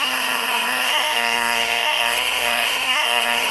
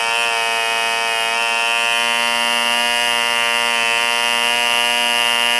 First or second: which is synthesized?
first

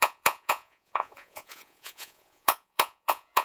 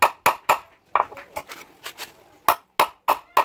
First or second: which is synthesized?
first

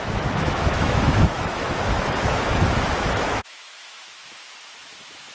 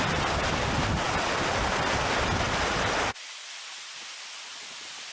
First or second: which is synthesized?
first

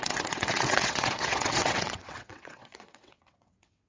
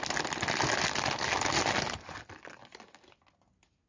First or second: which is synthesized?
first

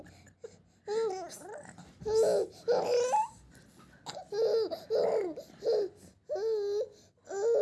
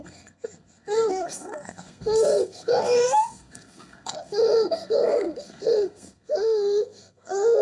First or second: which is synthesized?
second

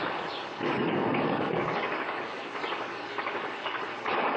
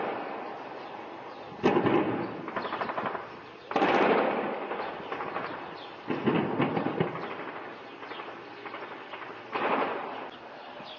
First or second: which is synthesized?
first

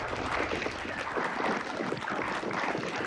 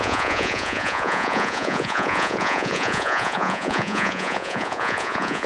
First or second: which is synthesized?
second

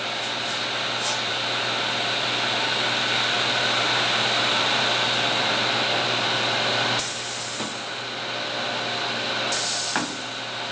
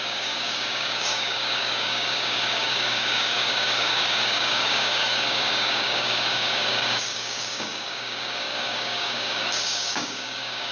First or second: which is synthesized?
second